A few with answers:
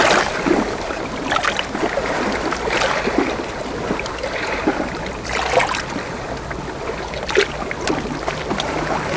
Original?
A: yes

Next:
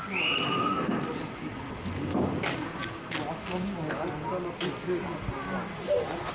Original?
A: yes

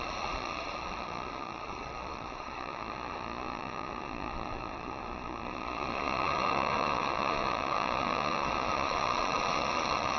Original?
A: no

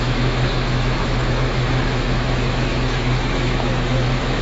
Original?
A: no